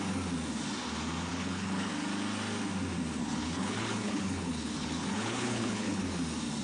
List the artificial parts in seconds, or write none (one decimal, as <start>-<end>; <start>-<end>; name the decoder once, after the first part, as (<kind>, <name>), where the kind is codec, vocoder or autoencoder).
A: 1.3-1.9 (codec, HILCodec); 3.2-6.0